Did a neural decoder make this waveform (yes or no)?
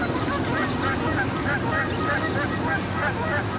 no